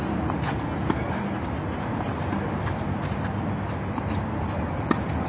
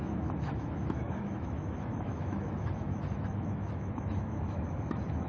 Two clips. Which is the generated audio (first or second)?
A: second